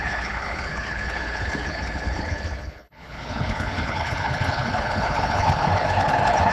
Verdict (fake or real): fake